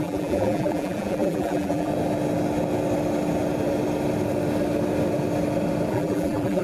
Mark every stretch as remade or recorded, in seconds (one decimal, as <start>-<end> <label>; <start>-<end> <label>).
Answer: 0.0-1.9 remade; 1.9-5.9 recorded; 5.9-6.6 remade